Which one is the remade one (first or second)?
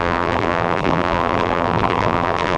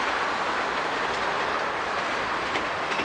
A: first